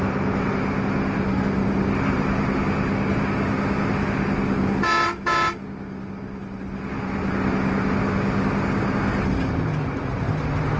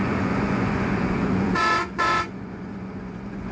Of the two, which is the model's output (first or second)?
second